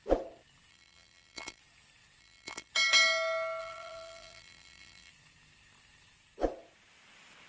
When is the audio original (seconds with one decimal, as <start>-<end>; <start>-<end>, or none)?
0.0-0.7; 1.6-2.2; 2.7-3.6; 5.1-7.5